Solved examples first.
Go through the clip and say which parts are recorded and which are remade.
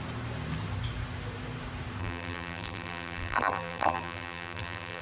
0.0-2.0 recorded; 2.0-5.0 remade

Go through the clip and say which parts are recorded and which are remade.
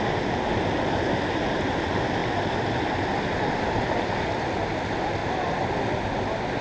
0.0-5.2 recorded; 5.2-5.8 remade; 5.8-6.6 recorded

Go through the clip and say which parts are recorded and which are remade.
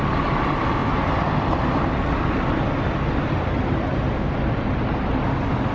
0.0-5.7 recorded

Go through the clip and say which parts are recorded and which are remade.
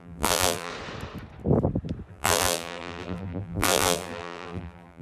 0.0-0.7 remade; 0.7-2.1 recorded; 2.1-5.0 remade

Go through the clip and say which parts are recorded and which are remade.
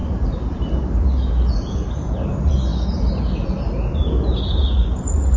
0.0-0.7 remade; 0.7-5.4 recorded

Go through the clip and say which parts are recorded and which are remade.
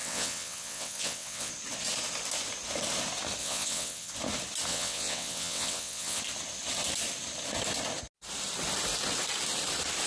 0.0-1.5 remade; 1.5-3.4 recorded; 3.4-4.1 remade; 4.1-4.7 recorded; 4.7-6.2 remade; 6.2-10.1 recorded